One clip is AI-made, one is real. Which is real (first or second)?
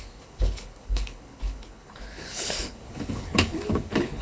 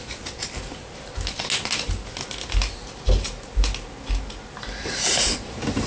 second